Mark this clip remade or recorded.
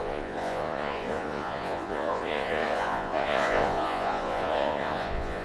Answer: remade